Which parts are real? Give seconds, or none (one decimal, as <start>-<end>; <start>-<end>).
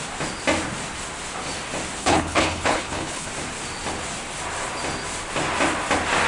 0.0-2.0; 3.3-6.3